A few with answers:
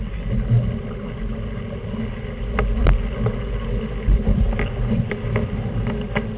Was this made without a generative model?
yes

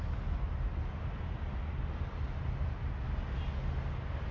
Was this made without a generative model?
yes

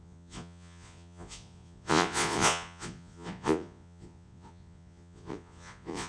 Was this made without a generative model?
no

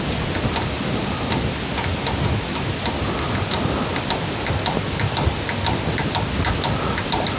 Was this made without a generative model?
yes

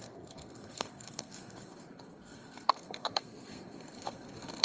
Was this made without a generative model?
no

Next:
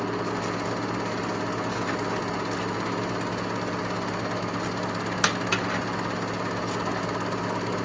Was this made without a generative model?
yes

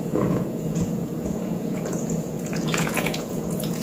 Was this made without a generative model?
no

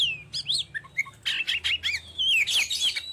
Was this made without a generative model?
yes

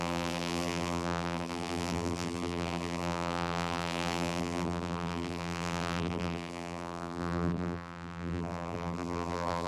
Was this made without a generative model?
no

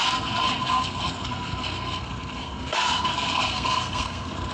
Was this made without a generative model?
no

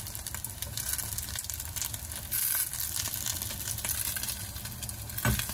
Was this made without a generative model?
yes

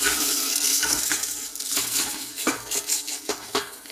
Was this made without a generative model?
no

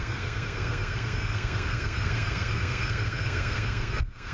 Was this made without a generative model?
no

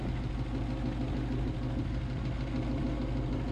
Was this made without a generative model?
yes